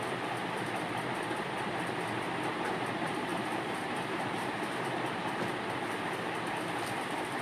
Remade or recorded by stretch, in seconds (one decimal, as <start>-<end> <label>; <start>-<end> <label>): 0.0-3.3 recorded; 3.3-5.3 remade; 5.3-7.4 recorded